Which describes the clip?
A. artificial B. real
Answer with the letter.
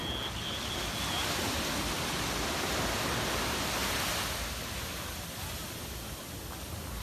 B